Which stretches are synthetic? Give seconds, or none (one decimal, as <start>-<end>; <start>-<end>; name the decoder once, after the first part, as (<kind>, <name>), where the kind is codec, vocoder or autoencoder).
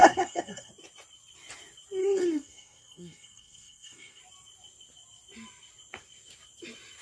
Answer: 0.0-0.7 (codec, SNAC); 2.0-4.2